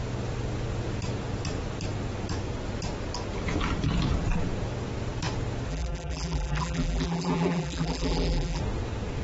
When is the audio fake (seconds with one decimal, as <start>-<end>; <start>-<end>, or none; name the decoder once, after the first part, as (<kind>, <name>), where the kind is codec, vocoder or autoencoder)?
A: 5.7-8.6 (vocoder, BigVGAN v2)